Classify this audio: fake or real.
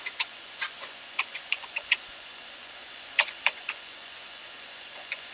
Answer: fake